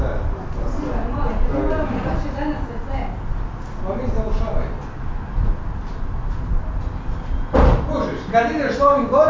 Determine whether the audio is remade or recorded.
recorded